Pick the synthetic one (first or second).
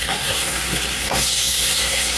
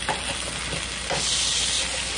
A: first